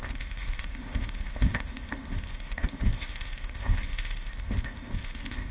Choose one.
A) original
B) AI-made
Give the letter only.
B